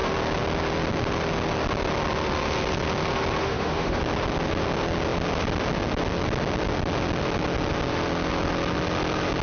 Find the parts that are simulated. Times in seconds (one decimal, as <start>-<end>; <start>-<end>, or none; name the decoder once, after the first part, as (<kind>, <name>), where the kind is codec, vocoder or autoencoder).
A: 3.4-4.0 (autoencoder, DAC-VAE)